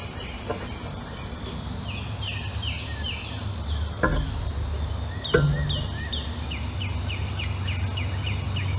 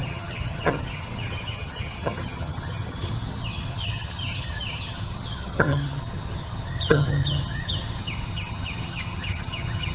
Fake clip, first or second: second